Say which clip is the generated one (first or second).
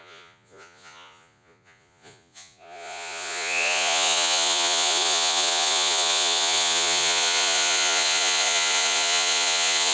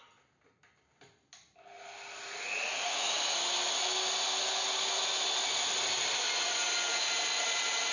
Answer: first